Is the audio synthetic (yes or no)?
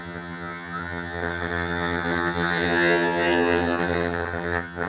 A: yes